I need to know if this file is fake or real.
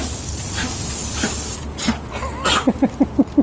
real